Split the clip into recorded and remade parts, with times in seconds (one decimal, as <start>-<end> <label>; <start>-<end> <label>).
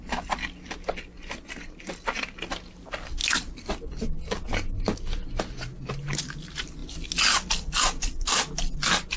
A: 0.0-9.2 recorded